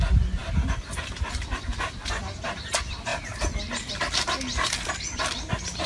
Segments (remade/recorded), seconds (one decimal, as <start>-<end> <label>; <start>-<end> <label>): 0.0-5.9 recorded